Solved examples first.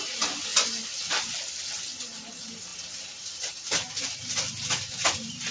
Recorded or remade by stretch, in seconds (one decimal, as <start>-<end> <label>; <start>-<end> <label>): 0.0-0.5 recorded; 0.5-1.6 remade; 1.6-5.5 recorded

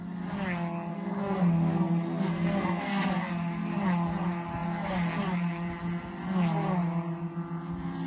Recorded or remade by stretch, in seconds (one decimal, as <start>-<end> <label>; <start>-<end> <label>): 0.0-0.9 recorded; 0.9-3.1 remade; 3.1-8.1 recorded

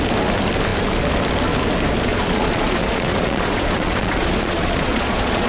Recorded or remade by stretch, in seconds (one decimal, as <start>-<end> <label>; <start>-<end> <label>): 0.0-2.1 recorded; 2.1-5.5 remade

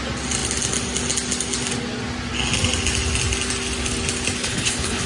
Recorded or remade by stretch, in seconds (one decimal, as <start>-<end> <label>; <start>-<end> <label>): 0.0-4.4 recorded; 4.4-5.1 remade

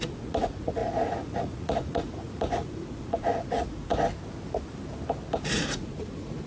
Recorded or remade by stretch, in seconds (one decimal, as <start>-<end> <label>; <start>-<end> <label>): 0.0-3.9 remade; 3.9-5.5 recorded; 5.5-6.5 remade

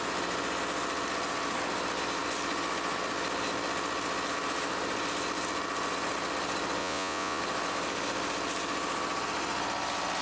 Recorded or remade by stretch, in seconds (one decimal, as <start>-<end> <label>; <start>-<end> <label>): 0.0-6.8 recorded; 6.8-7.4 remade; 7.4-10.2 recorded